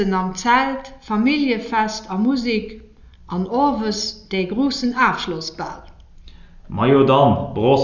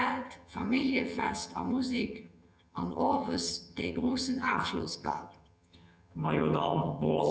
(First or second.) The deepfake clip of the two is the second